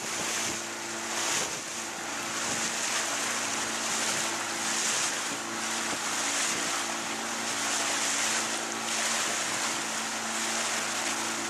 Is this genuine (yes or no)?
yes